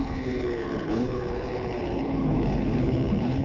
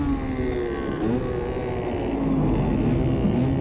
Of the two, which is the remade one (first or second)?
first